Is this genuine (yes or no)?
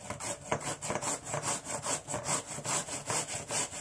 yes